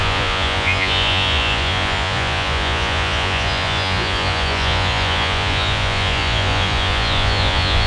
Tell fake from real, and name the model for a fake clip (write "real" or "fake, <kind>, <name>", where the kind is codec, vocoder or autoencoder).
fake, vocoder, Vocos